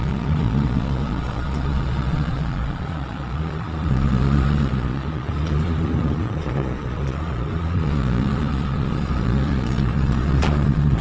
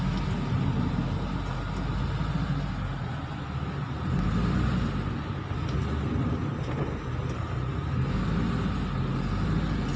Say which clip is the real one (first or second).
second